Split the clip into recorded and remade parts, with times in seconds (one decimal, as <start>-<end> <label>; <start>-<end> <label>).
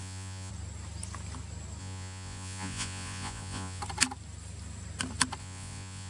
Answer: 0.0-0.5 remade; 0.5-1.8 recorded; 1.8-3.8 remade; 3.8-5.4 recorded; 5.4-6.1 remade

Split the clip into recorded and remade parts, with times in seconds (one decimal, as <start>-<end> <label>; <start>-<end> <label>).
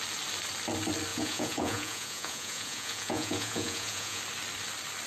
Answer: 0.0-1.1 recorded; 1.1-4.2 remade; 4.2-5.1 recorded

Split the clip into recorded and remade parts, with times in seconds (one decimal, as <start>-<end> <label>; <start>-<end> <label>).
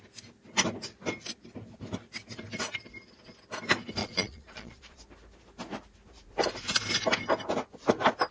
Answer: 0.0-4.0 recorded; 4.0-5.0 remade; 5.0-8.3 recorded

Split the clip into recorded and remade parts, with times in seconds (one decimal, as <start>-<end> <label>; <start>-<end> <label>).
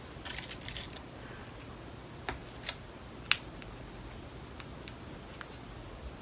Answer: 0.0-6.2 recorded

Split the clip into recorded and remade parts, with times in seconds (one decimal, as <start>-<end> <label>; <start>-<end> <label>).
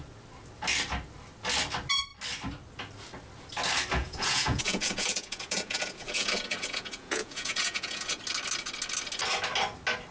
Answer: 0.0-4.0 recorded; 4.0-8.2 remade; 8.2-10.1 recorded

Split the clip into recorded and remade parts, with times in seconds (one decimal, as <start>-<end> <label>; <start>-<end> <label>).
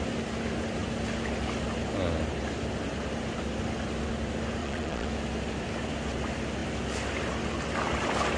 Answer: 0.0-4.6 recorded; 4.6-5.1 remade; 5.1-8.4 recorded